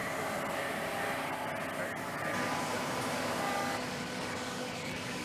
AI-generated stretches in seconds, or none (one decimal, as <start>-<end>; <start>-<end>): 3.1-5.2